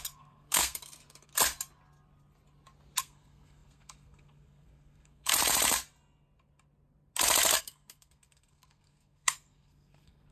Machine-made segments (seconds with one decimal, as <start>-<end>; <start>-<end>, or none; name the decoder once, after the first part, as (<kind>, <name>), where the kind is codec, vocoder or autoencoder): 0.0-1.3 (codec, SNAC); 3.0-5.3; 7.6-10.3